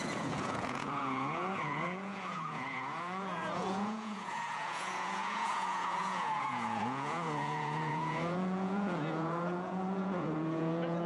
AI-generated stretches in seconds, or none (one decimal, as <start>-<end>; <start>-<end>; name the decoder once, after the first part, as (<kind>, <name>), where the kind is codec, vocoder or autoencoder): 0.0-11.1 (vocoder, Vocos)